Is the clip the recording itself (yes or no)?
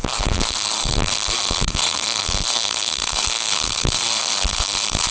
no